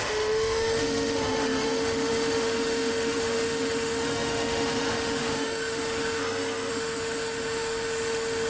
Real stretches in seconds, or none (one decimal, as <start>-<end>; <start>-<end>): 6.2-6.7